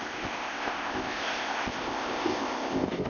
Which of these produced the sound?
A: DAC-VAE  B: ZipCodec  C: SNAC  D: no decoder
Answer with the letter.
B